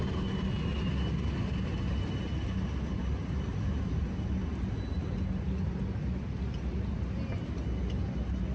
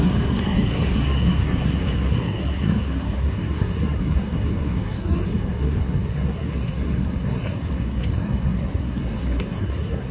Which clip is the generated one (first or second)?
second